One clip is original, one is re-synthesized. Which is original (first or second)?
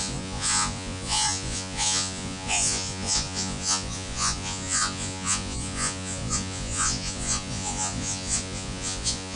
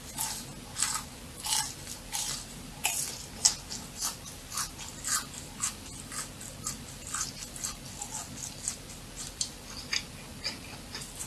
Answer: second